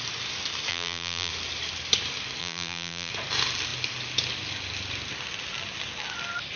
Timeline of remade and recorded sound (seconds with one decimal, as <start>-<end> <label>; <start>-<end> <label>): 0.0-0.7 recorded; 0.7-1.3 remade; 1.3-2.4 recorded; 2.4-3.1 remade; 3.1-6.6 recorded